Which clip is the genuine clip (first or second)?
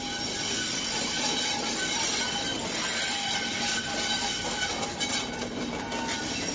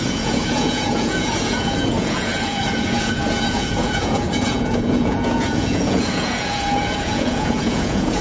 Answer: first